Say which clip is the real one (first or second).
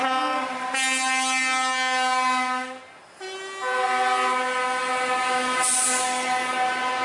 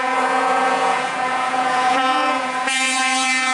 first